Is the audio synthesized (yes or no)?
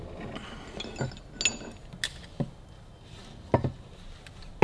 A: no